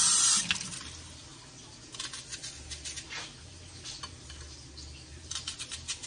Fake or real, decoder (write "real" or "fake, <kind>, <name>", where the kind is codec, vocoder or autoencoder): real